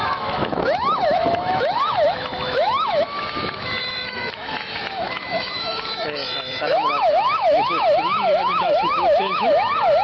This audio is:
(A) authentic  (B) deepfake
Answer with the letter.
B